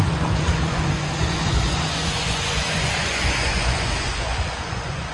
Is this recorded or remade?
remade